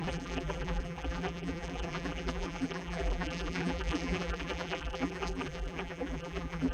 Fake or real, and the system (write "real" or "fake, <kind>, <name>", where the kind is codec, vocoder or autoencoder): fake, vocoder, BigVGAN v2